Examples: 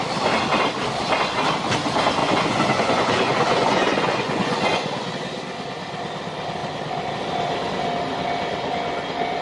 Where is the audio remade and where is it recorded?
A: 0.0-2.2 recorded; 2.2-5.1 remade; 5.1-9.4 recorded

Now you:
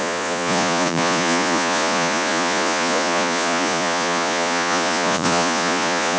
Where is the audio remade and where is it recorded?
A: 0.0-6.2 remade

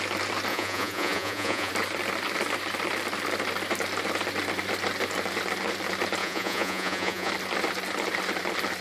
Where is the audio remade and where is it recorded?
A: 0.0-0.5 recorded; 0.5-1.7 remade; 1.7-6.2 recorded; 6.2-7.3 remade; 7.3-8.8 recorded

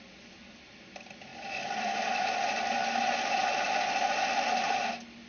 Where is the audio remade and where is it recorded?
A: 0.0-5.3 recorded